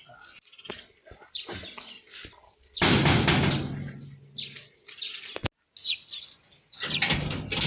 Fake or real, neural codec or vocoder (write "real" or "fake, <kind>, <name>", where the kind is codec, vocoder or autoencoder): real